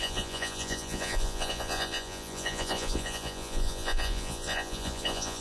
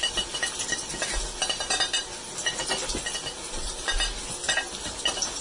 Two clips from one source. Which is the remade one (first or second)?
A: first